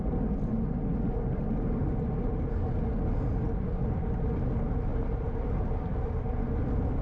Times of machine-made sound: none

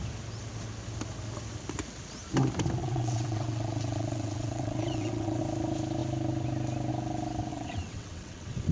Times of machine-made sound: 2.8-5.4 (vocoder, WaveNeXt); 7.5-8.7

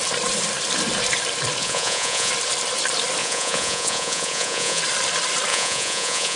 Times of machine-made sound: 1.6-2.3 (vocoder, Vocos); 3.2-4.8; 5.5-6.4